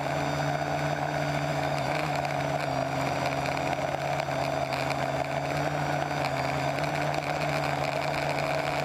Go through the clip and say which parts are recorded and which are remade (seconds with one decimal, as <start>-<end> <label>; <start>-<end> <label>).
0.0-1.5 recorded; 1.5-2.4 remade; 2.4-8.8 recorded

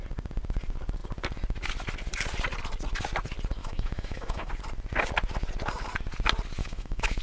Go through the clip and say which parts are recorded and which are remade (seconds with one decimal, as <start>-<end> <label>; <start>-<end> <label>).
0.0-3.6 recorded; 3.6-4.5 remade; 4.5-6.6 recorded; 6.6-7.2 remade

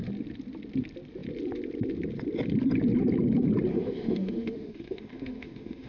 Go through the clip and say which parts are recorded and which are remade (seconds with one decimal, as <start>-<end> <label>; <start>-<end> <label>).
0.0-3.7 recorded; 3.7-5.9 remade

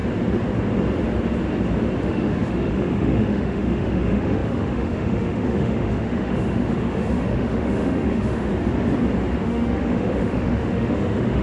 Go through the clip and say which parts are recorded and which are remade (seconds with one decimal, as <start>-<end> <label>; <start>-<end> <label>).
0.0-2.0 recorded; 2.0-8.5 remade; 8.5-9.4 recorded; 9.4-11.4 remade

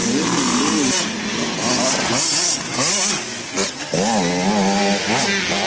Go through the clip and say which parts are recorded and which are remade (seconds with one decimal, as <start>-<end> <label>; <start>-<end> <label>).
0.0-5.7 recorded

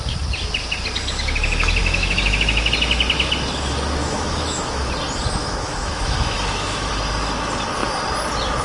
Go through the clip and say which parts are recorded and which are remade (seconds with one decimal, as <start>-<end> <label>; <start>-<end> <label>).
0.0-1.8 recorded; 1.8-2.7 remade; 2.7-4.0 recorded; 4.0-4.9 remade; 4.9-5.4 recorded; 5.4-6.9 remade; 6.9-8.6 recorded

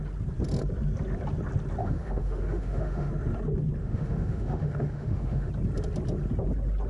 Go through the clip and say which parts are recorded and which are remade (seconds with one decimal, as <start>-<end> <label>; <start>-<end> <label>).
0.0-1.8 recorded; 1.8-3.1 remade; 3.1-3.8 recorded; 3.8-5.5 remade; 5.5-6.9 recorded